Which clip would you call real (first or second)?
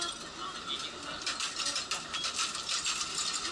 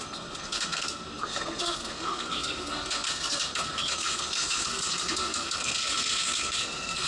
first